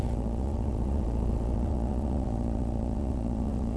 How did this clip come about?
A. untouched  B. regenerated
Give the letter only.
B